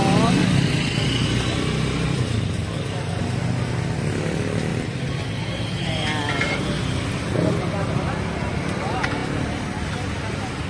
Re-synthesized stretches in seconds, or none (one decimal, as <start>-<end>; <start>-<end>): none